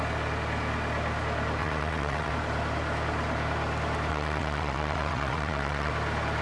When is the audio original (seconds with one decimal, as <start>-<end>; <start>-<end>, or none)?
0.0-1.6; 2.3-4.1; 5.9-6.4